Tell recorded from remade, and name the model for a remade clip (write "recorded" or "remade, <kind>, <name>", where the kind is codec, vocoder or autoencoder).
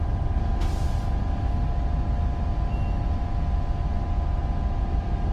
recorded